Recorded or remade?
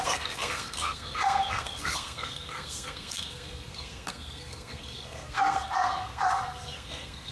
remade